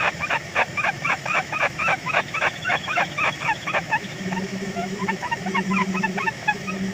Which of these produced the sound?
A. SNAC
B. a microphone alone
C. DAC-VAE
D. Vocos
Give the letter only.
C